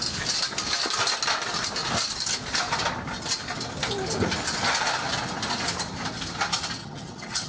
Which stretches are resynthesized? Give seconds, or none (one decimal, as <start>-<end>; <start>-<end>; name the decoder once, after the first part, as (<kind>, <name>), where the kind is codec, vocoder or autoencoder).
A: 6.8-7.5 (vocoder, HiFi-GAN)